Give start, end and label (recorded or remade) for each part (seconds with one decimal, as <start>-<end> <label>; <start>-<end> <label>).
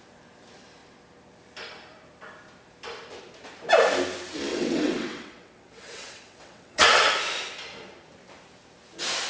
0.0-4.5 recorded; 4.5-7.1 remade; 7.1-9.3 recorded